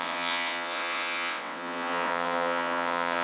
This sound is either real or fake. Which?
fake